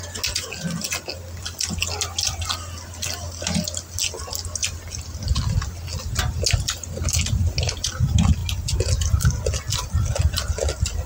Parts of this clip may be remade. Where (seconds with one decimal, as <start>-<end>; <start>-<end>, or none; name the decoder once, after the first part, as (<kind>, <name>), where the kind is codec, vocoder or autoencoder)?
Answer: none